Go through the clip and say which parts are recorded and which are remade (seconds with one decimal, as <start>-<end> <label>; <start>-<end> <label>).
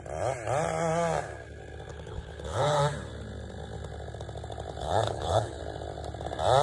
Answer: 0.0-1.9 recorded; 1.9-2.8 remade; 2.8-4.8 recorded; 4.8-5.6 remade; 5.6-6.6 recorded